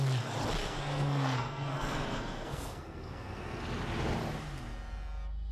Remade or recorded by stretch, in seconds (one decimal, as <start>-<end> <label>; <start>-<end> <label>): 0.0-0.6 recorded; 0.6-3.6 remade; 3.6-5.5 recorded